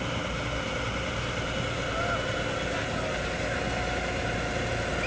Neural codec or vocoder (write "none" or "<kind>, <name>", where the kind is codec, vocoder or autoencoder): none